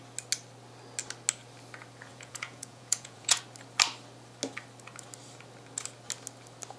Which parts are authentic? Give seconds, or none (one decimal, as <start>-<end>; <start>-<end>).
0.0-2.1; 3.4-6.8